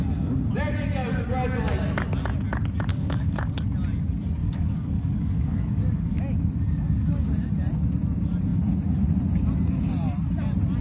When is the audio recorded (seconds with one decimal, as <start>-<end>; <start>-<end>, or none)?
0.0-2.9; 3.5-4.4; 6.2-10.8